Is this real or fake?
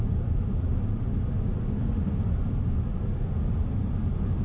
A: real